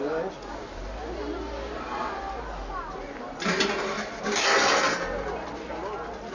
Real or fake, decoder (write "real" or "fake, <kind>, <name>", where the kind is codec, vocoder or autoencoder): real